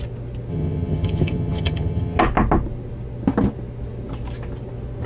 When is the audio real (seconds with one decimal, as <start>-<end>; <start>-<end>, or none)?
0.0-0.5; 2.2-5.1